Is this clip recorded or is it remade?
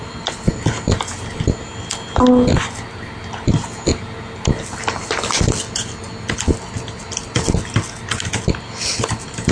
recorded